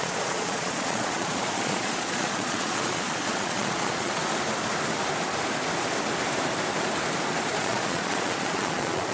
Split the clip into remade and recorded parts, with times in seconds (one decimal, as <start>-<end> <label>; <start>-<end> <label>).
0.0-4.2 remade; 4.2-7.6 recorded; 7.6-9.1 remade